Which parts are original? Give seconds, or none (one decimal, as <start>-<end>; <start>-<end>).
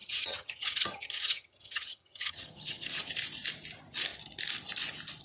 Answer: 3.1-5.2